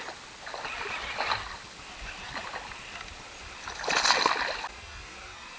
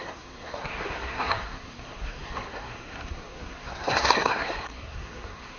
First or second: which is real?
first